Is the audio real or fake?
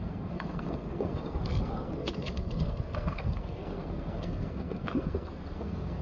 fake